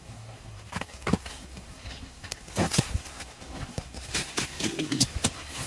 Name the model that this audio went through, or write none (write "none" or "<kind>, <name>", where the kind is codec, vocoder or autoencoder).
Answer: codec, SNAC